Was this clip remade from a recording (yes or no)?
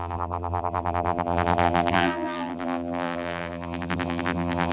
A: yes